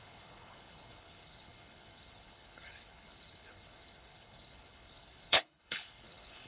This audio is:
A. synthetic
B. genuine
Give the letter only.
A